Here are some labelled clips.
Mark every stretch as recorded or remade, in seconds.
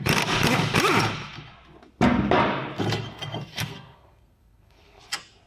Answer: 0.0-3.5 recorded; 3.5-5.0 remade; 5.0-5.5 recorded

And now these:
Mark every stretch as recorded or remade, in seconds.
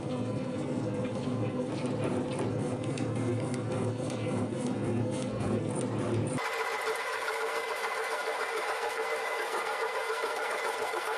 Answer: 0.0-1.7 remade; 1.7-2.5 recorded; 2.5-5.7 remade; 5.7-7.0 recorded; 7.0-11.2 remade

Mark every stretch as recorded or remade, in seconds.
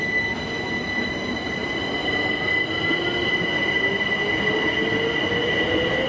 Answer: 0.0-6.1 recorded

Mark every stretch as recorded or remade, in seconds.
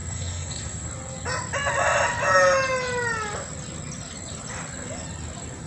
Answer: 0.0-0.9 remade; 0.9-5.7 recorded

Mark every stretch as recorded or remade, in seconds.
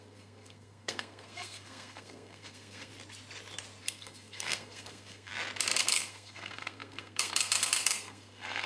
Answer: 0.0-2.9 remade; 2.9-3.8 recorded; 3.8-5.3 remade; 5.3-5.8 recorded; 5.8-8.7 remade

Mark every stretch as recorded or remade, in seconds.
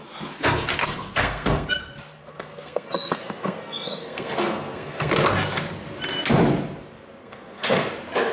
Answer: 0.0-0.8 recorded; 0.8-1.8 remade; 1.8-2.2 recorded; 2.2-5.1 remade; 5.1-7.2 recorded; 7.2-7.9 remade; 7.9-8.3 recorded